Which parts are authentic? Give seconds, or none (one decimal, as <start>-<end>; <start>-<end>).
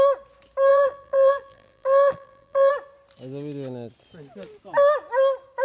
0.0-0.7; 2.7-5.6